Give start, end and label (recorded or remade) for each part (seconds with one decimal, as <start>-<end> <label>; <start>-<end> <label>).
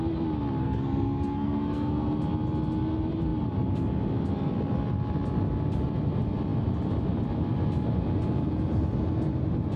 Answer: 0.0-0.6 recorded; 0.6-2.2 remade; 2.2-9.8 recorded